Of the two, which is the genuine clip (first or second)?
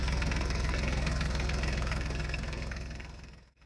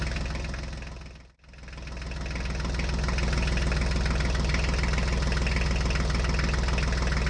second